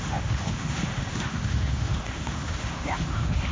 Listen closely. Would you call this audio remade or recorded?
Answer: remade